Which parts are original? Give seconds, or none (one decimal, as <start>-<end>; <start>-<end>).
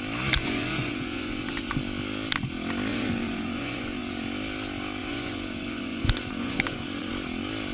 0.0-0.4; 1.7-2.9; 4.2-5.0; 7.1-7.7